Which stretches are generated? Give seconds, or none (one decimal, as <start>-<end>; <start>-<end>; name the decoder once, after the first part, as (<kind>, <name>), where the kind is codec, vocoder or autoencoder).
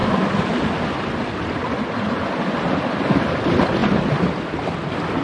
3.1-5.2 (vocoder, BigVGAN v2)